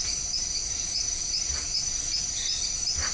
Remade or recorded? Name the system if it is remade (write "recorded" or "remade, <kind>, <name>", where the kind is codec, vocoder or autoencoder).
recorded